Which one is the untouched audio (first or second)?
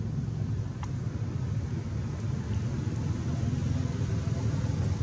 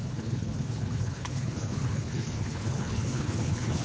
first